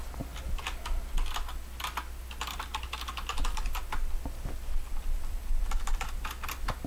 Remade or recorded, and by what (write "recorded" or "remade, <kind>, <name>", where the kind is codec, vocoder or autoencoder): recorded